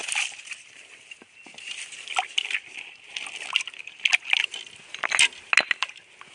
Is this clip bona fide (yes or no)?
yes